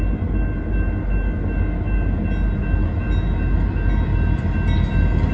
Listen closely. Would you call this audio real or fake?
real